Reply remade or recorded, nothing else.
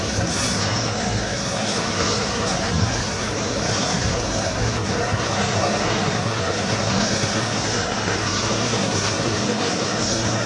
remade